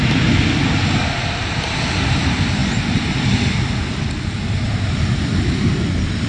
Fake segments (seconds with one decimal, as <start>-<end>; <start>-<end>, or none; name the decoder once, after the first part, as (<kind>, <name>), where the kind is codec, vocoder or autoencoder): none